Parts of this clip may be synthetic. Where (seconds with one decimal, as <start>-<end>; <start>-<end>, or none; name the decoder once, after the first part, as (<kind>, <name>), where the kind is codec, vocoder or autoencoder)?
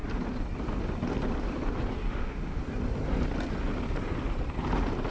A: 2.1-2.6 (autoencoder, DAC-VAE)